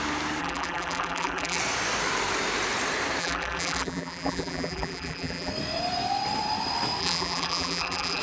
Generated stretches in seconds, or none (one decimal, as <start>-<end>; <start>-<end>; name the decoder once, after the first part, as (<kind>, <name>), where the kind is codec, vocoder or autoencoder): 0.4-1.6 (vocoder, BigVGAN v2); 3.2-5.5; 7.0-8.2